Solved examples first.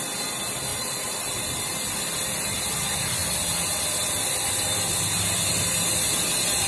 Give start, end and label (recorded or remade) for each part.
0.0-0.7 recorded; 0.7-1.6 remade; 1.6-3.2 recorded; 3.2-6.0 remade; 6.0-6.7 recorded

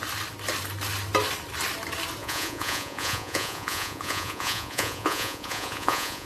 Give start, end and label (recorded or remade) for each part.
0.0-2.2 recorded; 2.2-6.3 remade

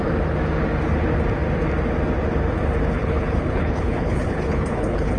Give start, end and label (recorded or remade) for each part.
0.0-3.0 recorded; 3.0-5.2 remade